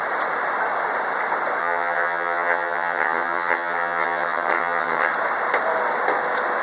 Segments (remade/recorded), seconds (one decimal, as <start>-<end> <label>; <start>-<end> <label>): 0.0-1.6 recorded; 1.6-5.1 remade; 5.1-6.6 recorded